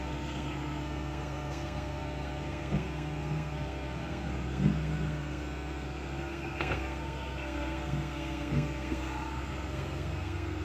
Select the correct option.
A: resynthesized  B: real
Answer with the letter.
A